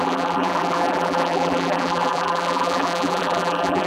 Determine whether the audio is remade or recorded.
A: remade